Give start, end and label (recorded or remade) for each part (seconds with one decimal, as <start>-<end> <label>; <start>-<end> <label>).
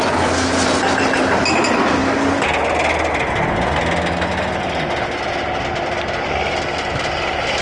0.0-7.6 recorded